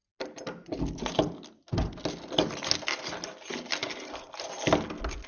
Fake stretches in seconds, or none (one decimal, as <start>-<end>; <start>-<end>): none